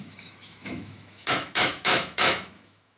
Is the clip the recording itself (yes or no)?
no